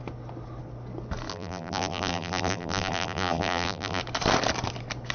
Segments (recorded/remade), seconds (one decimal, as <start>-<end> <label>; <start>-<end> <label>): 0.0-1.3 recorded; 1.3-4.0 remade; 4.0-5.1 recorded